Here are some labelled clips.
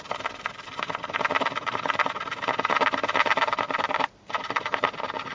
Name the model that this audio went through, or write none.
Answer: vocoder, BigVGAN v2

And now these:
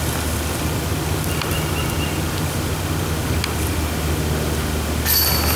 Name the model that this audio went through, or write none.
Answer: none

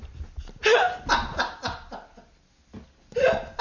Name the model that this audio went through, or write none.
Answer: none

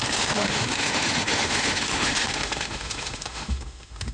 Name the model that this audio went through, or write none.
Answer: autoencoder, DAC-VAE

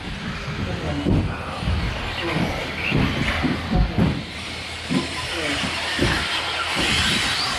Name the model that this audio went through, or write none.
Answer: none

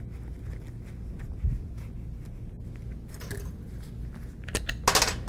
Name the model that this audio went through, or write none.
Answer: none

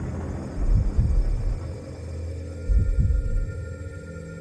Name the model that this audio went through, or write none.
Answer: none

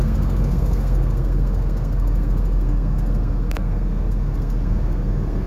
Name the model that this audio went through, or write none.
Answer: codec, SNAC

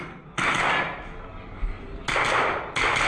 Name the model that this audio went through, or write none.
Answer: none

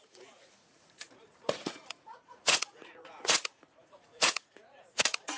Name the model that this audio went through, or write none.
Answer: vocoder, Vocos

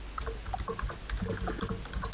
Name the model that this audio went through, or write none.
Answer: none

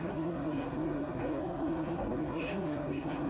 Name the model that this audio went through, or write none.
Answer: codec, SNAC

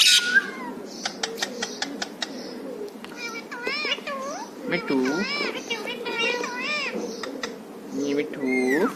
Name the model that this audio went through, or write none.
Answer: none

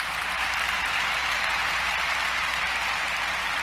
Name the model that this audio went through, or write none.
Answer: vocoder, BigVGAN v2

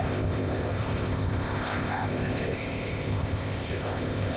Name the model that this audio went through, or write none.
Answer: codec, ZipCodec